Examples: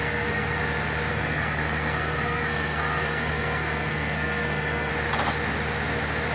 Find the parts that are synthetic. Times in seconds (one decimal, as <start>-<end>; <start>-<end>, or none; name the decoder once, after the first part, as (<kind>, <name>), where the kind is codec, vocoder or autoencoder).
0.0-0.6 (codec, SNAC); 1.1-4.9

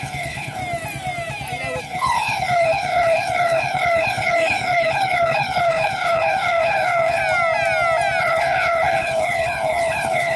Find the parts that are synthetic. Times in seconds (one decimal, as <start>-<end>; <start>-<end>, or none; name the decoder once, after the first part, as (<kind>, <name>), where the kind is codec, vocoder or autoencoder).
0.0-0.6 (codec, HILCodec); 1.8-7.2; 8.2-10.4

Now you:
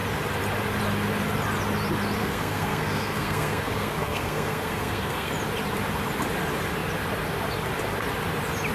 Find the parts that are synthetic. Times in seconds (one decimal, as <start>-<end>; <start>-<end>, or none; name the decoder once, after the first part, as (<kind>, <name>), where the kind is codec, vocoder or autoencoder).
2.2-5.3 (codec, SNAC)

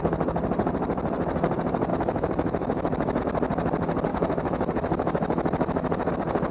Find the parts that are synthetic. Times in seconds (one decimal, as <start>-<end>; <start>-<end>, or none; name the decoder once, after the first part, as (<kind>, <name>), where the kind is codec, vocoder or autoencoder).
1.9-3.2 (autoencoder, DAC-VAE); 4.1-6.1

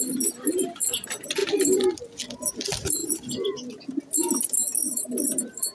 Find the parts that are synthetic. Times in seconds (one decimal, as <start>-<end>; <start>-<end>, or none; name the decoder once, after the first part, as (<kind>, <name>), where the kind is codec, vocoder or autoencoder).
3.0-4.0 (vocoder, BigVGAN v2)

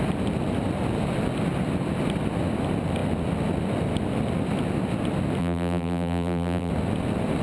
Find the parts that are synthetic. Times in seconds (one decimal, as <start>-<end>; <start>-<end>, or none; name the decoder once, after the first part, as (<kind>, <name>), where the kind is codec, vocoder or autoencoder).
5.4-6.7 (vocoder, BigVGAN v2)